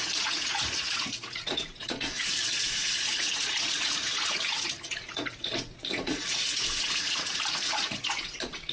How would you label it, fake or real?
fake